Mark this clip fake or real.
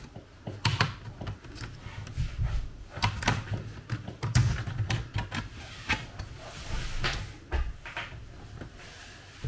real